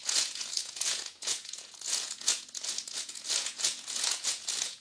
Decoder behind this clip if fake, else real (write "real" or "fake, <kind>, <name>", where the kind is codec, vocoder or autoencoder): fake, vocoder, Vocos